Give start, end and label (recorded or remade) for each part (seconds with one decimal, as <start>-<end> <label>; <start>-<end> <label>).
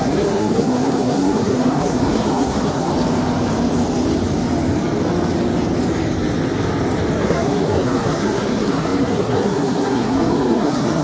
0.0-2.9 remade; 2.9-7.2 recorded; 7.2-11.0 remade